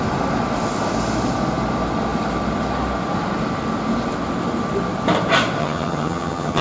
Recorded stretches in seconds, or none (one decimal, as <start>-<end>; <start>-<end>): 0.0-5.6